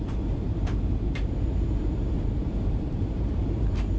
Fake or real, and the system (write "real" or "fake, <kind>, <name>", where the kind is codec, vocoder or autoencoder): fake, vocoder, BigVGAN v2